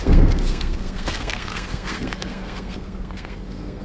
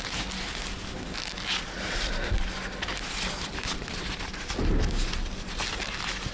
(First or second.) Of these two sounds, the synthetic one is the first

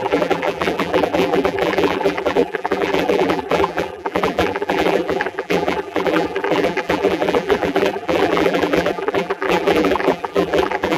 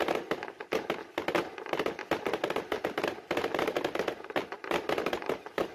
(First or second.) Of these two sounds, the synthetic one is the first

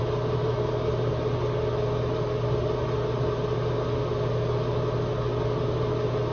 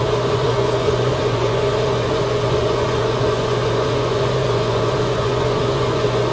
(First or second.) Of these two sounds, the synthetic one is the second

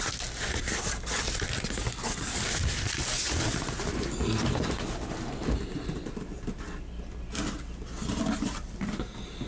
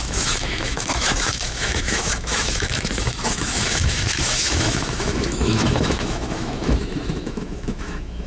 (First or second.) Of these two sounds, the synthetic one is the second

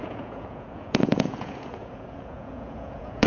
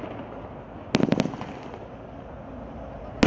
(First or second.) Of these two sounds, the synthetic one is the first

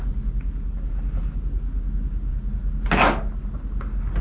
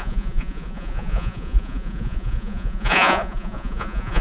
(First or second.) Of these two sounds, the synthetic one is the second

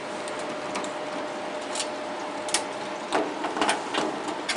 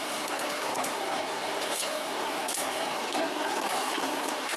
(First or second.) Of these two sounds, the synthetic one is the second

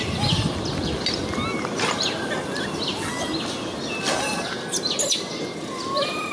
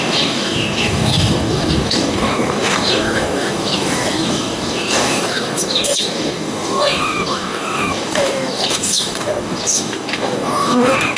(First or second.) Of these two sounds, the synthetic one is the second